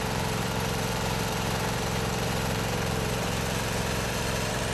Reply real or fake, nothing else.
fake